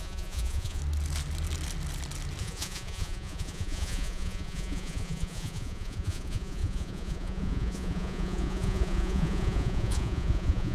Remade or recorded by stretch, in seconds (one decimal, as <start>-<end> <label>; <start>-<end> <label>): 0.0-0.8 remade; 0.8-2.4 recorded; 2.4-10.7 remade